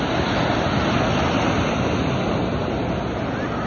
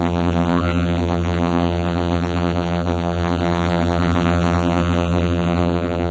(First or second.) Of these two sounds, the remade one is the second